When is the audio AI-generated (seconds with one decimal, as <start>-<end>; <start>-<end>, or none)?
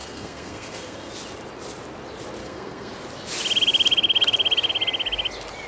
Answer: 0.0-1.1; 2.4-2.9